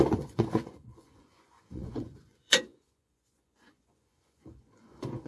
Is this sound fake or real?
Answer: fake